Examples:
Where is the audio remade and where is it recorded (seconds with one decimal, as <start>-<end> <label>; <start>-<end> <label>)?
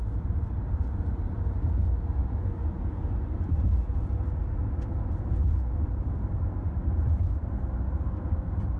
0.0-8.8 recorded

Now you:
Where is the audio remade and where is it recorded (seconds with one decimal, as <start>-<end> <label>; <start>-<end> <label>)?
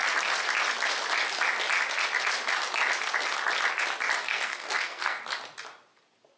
0.0-4.2 recorded; 4.2-5.2 remade; 5.2-6.4 recorded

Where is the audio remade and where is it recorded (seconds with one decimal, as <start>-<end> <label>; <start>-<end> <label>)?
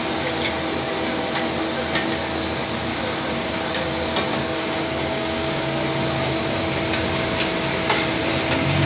0.0-2.9 recorded; 2.9-3.5 remade; 3.5-4.3 recorded; 4.3-5.6 remade; 5.6-8.9 recorded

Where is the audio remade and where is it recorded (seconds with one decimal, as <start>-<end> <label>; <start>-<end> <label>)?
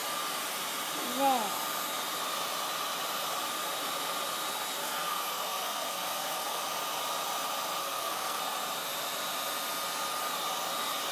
0.0-4.8 recorded; 4.8-6.6 remade; 6.6-7.8 recorded; 7.8-8.4 remade; 8.4-11.1 recorded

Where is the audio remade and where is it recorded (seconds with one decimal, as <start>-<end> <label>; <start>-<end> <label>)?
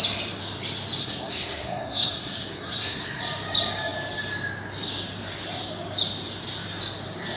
0.0-1.0 recorded; 1.0-3.2 remade; 3.2-7.4 recorded